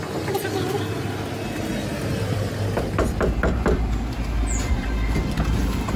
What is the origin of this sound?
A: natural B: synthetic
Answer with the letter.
A